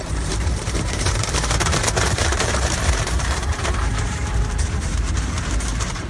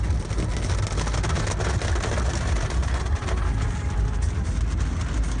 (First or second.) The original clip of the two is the second